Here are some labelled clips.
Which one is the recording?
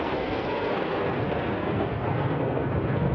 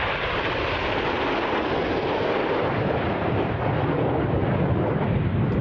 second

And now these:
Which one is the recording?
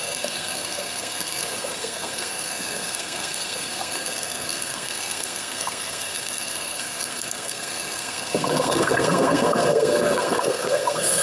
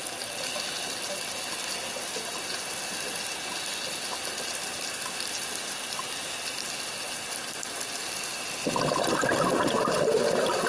second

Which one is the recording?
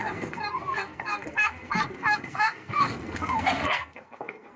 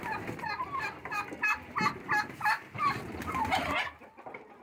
second